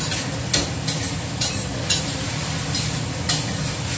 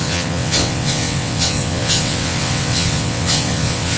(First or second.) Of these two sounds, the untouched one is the first